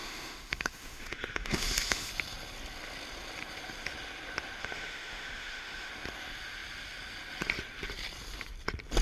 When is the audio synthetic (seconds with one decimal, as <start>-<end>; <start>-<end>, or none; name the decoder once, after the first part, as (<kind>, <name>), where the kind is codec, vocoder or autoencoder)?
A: 0.0-2.1 (autoencoder, DAC-VAE); 4.6-5.9